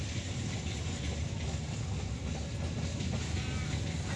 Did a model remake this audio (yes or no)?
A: no